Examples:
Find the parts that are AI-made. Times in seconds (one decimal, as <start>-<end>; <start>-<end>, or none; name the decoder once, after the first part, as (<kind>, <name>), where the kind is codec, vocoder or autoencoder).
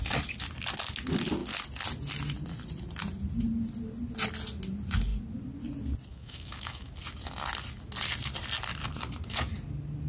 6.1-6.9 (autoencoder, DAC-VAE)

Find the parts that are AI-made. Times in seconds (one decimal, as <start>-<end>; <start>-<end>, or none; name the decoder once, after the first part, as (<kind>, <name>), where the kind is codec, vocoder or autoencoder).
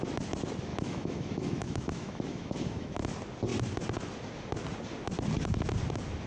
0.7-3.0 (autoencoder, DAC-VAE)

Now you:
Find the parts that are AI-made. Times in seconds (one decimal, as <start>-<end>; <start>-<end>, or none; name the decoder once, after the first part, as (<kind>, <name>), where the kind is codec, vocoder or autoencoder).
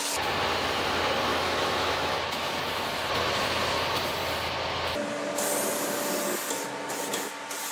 1.3-2.6 (autoencoder, DAC-VAE)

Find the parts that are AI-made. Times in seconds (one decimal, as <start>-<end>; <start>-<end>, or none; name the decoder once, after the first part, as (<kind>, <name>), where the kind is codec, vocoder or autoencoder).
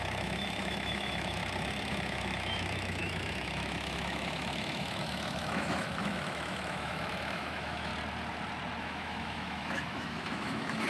0.0-1.4 (autoencoder, DAC-VAE); 1.9-7.9; 8.8-10.9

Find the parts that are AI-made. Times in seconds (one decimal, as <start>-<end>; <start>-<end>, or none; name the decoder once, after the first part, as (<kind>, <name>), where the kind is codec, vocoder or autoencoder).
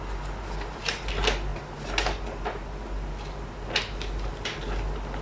none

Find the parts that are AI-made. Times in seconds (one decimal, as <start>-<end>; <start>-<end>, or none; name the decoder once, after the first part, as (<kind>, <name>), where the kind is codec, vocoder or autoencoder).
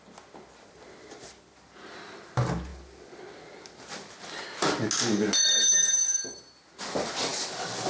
none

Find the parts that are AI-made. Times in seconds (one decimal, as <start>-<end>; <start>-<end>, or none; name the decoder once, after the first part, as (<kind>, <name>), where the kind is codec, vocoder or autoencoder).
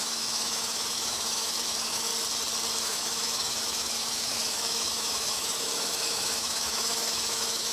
0.0-2.1 (autoencoder, DAC-VAE); 2.8-7.7